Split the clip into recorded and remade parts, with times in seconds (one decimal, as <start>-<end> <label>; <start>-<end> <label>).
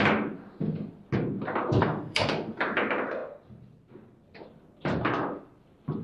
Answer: 0.0-1.8 recorded; 1.8-2.3 remade; 2.3-6.0 recorded